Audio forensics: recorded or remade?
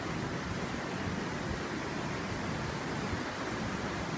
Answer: recorded